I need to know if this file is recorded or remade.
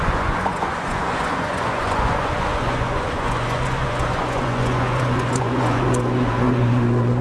remade